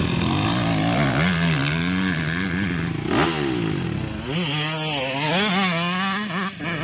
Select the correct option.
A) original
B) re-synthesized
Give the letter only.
A